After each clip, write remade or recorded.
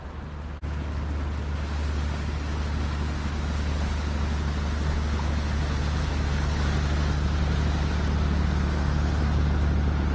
recorded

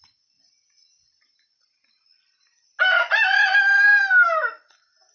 recorded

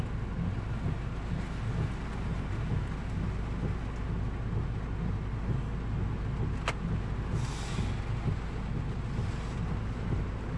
recorded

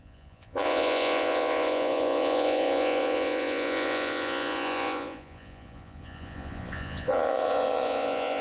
remade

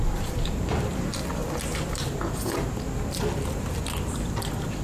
remade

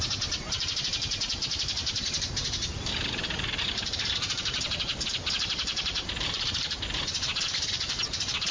remade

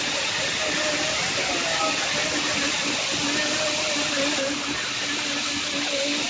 recorded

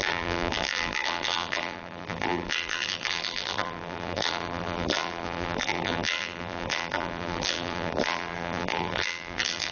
remade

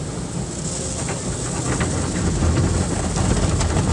recorded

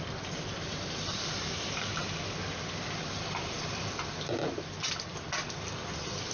recorded